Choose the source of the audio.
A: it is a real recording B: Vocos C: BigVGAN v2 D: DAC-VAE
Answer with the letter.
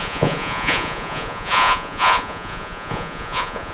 B